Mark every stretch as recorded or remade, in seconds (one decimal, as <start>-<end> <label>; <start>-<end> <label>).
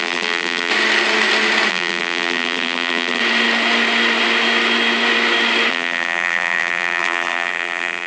0.0-0.7 remade; 0.7-1.7 recorded; 1.7-3.2 remade; 3.2-5.7 recorded; 5.7-8.1 remade